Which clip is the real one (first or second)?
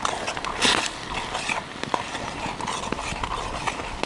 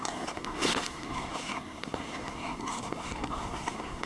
first